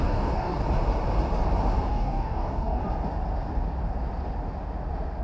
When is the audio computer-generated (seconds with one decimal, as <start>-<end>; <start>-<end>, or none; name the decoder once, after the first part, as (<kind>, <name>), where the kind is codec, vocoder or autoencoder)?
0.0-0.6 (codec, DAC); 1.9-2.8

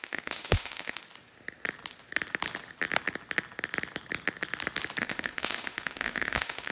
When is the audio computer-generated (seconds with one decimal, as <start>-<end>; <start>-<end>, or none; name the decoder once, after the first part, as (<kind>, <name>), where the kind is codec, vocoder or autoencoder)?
0.0-1.0 (autoencoder, DAC-VAE); 5.0-6.7

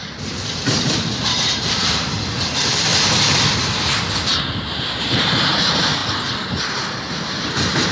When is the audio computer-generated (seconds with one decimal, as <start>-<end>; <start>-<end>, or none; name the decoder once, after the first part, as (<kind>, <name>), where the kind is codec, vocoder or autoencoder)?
0.0-2.9 (vocoder, BigVGAN v2); 4.8-6.0; 6.7-7.9

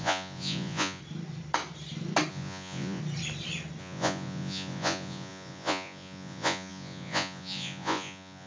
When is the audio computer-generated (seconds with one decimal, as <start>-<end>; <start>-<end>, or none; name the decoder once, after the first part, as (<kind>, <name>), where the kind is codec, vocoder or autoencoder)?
0.0-1.0 (vocoder, Vocos); 2.3-3.0; 3.8-8.5